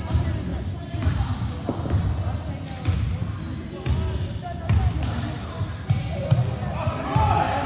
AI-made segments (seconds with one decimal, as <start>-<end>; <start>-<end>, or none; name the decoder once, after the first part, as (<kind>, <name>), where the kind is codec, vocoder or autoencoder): 0.5-1.4 (vocoder, BigVGAN v2)